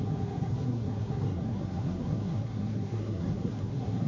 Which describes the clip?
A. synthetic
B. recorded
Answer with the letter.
A